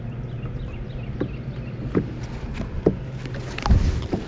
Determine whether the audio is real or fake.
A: real